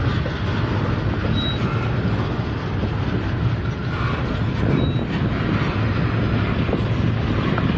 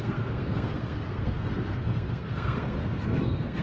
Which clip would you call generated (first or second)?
second